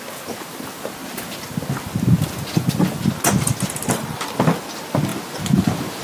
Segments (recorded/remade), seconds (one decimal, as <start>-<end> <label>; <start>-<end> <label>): 0.0-6.0 recorded